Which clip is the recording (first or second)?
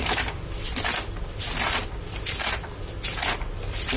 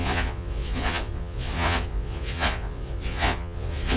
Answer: first